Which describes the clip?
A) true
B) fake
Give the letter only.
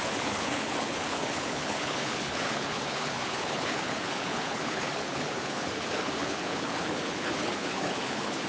B